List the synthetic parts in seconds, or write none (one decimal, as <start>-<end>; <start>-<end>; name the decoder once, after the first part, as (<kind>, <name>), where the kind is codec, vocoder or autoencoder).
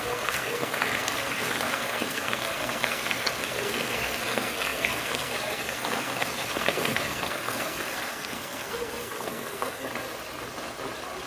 0.0-9.9 (codec, SNAC)